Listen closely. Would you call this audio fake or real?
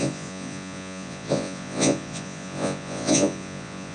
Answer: fake